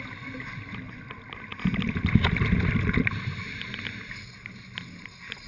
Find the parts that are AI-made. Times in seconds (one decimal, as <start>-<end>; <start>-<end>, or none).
none